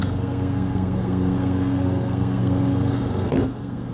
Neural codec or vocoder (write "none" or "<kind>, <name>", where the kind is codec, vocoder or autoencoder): codec, SNAC